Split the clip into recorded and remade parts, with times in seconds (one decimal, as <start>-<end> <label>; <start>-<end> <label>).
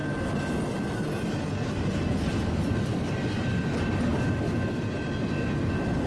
0.0-6.1 recorded